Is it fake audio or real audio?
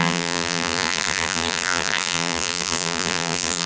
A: fake